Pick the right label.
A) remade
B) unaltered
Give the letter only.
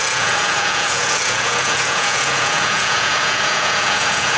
A